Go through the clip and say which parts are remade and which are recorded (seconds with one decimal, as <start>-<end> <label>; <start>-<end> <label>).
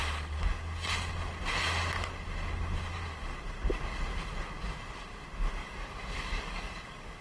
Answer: 0.0-5.6 recorded; 5.6-7.2 remade